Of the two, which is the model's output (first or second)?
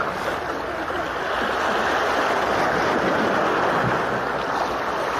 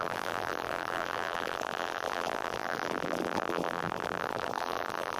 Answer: second